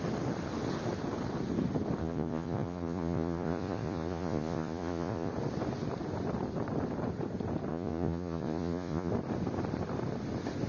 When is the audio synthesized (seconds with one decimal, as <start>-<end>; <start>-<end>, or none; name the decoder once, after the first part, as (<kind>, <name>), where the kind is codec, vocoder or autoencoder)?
2.0-5.3 (vocoder, Vocos); 7.7-9.1

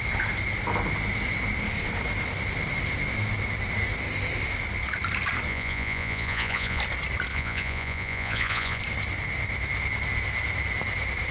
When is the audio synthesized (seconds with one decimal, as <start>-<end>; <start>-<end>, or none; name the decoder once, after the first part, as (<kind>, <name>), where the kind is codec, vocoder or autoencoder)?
5.5-6.8 (vocoder, Vocos); 7.3-8.8